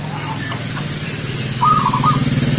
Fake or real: real